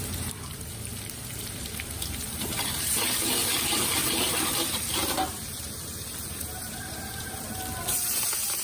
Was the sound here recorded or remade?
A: remade